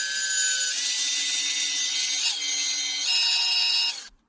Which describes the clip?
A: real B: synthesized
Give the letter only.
A